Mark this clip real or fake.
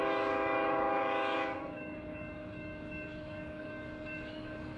fake